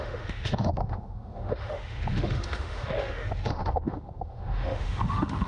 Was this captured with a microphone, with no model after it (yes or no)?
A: no